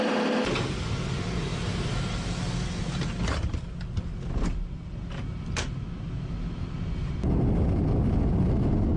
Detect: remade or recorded recorded